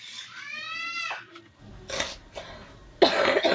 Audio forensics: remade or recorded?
recorded